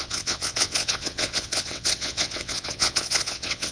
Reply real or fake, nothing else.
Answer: fake